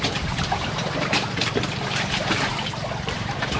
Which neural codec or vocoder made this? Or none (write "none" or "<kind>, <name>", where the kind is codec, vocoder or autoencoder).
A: vocoder, BigVGAN v2